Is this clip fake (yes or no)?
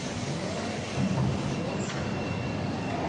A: yes